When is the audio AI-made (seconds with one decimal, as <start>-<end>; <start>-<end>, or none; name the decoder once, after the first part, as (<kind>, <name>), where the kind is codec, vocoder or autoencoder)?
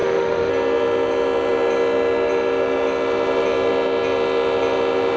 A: 0.0-0.5 (autoencoder, DAC-VAE)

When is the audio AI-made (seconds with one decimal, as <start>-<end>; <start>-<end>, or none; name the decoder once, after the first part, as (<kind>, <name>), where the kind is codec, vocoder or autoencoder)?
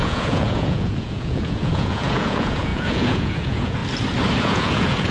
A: 0.0-3.8 (vocoder, Vocos); 4.4-5.1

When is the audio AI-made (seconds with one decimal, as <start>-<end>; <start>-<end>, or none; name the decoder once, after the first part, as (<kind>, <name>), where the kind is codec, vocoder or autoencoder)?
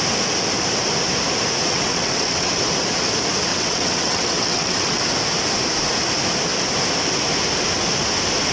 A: 1.7-2.6 (vocoder, WaveNeXt); 3.5-5.0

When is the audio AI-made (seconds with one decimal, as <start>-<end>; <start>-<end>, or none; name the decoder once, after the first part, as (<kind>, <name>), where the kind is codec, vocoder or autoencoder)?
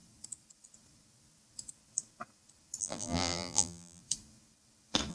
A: 2.8-4.0 (vocoder, BigVGAN v2)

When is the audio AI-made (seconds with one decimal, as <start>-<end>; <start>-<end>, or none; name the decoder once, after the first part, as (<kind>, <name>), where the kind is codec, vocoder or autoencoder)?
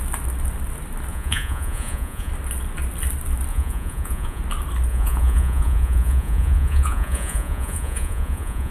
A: 1.1-2.3 (vocoder, Vocos); 3.5-4.4; 4.9-8.7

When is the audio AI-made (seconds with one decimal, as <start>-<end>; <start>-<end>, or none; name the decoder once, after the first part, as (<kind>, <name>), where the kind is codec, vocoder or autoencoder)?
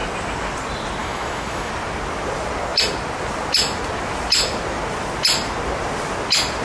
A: 1.0-1.7 (autoencoder, DAC-VAE)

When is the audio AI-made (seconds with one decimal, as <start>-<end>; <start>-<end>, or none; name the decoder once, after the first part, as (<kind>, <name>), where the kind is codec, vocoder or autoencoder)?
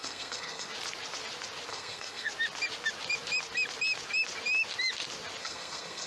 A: 0.0-0.7 (codec, SNAC); 1.7-2.3; 5.4-6.1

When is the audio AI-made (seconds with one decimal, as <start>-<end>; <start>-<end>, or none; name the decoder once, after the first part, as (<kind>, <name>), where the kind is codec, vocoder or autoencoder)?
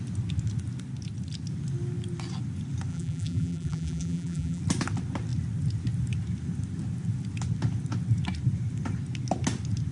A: 2.9-4.6 (vocoder, BigVGAN v2)